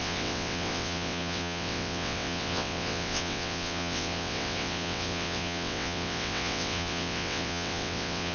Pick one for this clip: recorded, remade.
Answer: remade